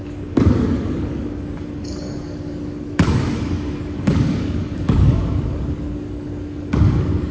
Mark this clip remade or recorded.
remade